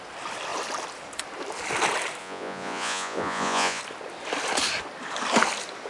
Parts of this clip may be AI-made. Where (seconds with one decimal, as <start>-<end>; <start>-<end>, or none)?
2.2-3.8

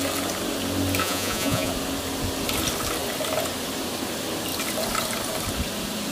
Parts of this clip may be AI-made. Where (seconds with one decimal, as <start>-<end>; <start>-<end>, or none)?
1.0-1.7